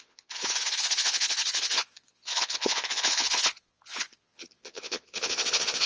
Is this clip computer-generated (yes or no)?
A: yes